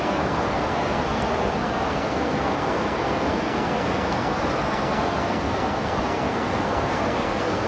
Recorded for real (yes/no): no